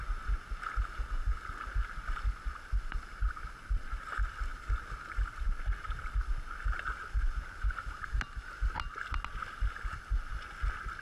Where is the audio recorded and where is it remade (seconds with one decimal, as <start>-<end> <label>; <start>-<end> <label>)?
0.0-11.0 recorded